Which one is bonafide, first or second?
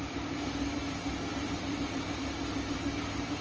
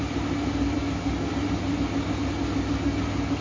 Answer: second